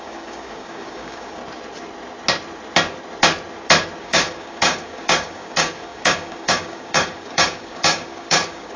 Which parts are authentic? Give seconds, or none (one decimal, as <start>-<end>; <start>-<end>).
1.4-4.0